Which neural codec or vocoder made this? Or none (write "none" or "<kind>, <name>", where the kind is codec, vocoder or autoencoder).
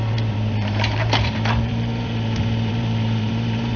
vocoder, BigVGAN v2